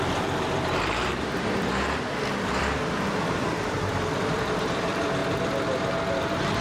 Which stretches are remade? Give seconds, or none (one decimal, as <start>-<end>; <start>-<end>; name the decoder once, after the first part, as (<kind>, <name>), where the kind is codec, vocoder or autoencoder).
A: 0.0-5.2 (vocoder, BigVGAN v2); 6.1-6.6